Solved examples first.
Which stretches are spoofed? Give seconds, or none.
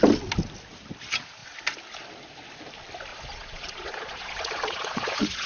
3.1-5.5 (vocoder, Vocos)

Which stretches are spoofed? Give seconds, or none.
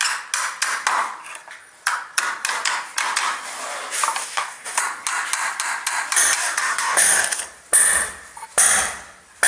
4.2-4.8 (codec, DAC); 6.4-7.4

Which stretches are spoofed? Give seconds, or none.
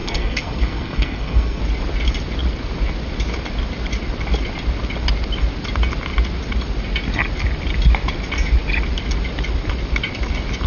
0.0-1.6 (codec, SNAC)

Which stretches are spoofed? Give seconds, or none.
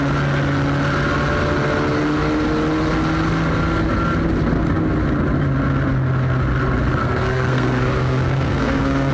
7.0-9.1 (codec, SNAC)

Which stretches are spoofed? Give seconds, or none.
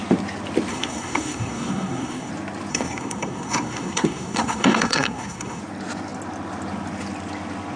0.7-2.3 (codec, SNAC); 2.7-5.6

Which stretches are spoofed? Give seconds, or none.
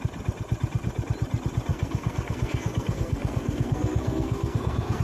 1.7-5.0 (codec, SNAC)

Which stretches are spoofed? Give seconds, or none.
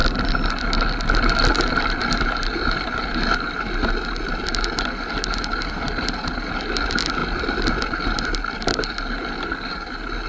none